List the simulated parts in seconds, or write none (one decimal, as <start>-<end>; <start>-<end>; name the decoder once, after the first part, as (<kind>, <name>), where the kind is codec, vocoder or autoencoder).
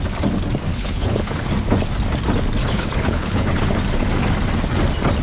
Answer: 0.7-1.4 (codec, HILCodec); 2.6-3.7